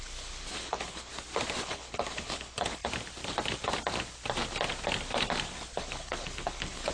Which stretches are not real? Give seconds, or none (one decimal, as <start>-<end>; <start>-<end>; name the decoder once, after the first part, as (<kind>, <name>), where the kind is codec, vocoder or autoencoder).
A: 0.0-1.1 (codec, HILCodec); 1.6-2.8; 5.8-6.9